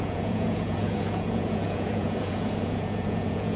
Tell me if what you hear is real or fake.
fake